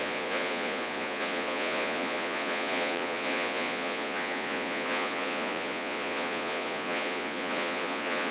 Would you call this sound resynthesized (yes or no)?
yes